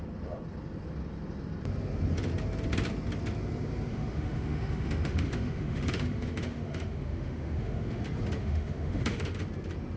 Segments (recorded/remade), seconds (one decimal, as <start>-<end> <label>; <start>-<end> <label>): 0.0-3.9 recorded; 3.9-8.0 remade; 8.0-8.4 recorded; 8.4-9.4 remade; 9.4-10.0 recorded